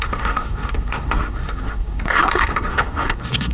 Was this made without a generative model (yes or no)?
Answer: no